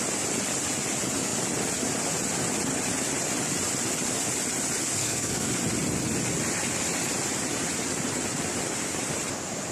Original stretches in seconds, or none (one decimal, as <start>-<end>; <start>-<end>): 0.0-5.0; 5.5-9.7